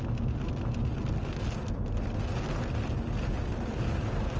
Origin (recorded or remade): recorded